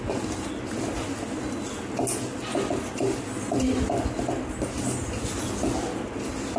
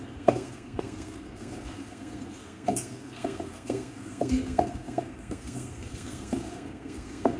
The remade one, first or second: second